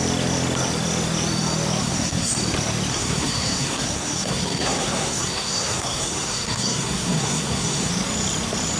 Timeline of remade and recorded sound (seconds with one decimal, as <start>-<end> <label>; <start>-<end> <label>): 0.0-1.8 recorded; 1.8-2.3 remade; 2.3-2.9 recorded; 2.9-7.9 remade; 7.9-8.8 recorded